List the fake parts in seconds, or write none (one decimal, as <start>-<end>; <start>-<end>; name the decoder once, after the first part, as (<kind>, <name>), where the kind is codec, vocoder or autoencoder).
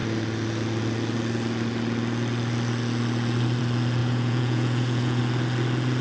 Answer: 4.0-5.2 (vocoder, Vocos)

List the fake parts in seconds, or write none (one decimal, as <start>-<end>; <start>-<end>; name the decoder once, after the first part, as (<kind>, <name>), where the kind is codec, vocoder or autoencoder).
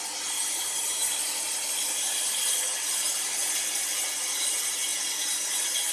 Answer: 1.0-4.5 (vocoder, BigVGAN v2)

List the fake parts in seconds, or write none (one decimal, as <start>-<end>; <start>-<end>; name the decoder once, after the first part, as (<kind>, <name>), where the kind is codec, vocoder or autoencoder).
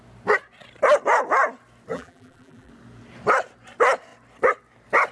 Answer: 1.9-2.7 (vocoder, BigVGAN v2)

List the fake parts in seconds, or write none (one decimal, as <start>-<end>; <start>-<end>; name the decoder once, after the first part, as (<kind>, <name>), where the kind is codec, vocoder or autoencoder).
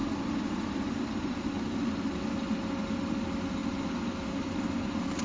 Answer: none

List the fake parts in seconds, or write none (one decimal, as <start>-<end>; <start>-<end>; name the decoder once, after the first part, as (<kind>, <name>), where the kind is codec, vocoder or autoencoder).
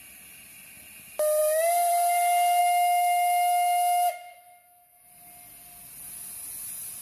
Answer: 2.6-5.1 (autoencoder, DAC-VAE)